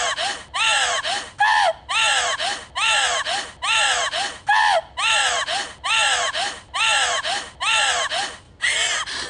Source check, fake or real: real